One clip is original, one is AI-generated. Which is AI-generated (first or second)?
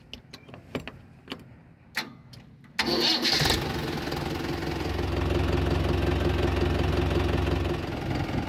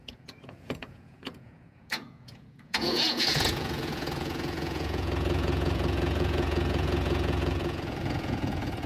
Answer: second